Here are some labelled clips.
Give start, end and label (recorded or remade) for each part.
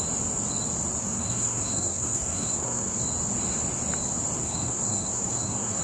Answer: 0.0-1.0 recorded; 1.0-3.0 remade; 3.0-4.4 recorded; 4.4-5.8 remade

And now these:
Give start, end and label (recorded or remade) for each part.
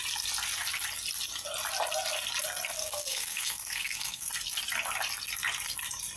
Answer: 0.0-2.8 recorded; 2.8-4.3 remade; 4.3-6.2 recorded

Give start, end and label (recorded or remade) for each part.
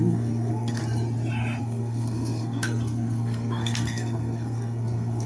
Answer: 0.0-0.8 remade; 0.8-1.6 recorded; 1.6-5.3 remade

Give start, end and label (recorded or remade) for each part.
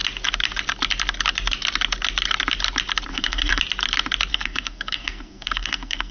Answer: 0.0-3.1 recorded; 3.1-3.6 remade; 3.6-4.3 recorded; 4.3-6.1 remade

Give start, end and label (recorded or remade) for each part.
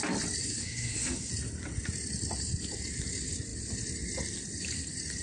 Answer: 0.0-0.4 recorded; 0.4-1.3 remade; 1.3-5.2 recorded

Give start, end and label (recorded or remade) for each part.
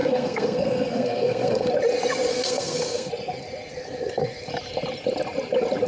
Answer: 0.0-1.7 remade; 1.7-2.3 recorded; 2.3-3.1 remade; 3.1-5.9 recorded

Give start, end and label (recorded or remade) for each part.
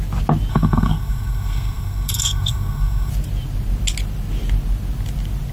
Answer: 0.0-0.5 recorded; 0.5-3.1 remade; 3.1-5.5 recorded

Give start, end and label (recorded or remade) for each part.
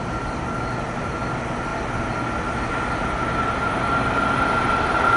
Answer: 0.0-5.2 recorded